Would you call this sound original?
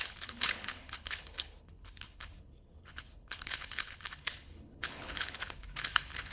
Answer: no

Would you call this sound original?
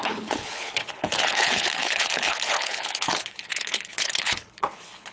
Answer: no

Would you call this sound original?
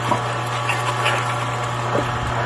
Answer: yes